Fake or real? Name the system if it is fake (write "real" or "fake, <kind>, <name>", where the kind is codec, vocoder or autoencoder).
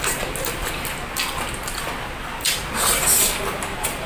real